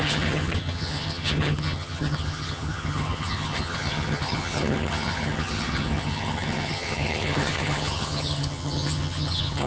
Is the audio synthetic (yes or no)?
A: yes